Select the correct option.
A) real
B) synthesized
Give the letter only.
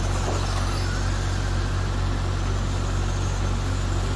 A